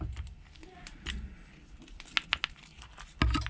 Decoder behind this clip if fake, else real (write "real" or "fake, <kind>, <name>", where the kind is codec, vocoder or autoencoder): real